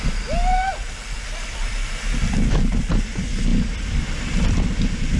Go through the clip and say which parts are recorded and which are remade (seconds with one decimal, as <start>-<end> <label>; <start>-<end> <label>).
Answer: 0.0-5.2 recorded